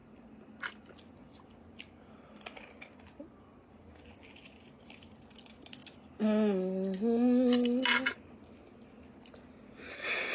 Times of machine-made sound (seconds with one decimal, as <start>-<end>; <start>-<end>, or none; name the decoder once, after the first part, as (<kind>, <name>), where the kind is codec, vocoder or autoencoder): none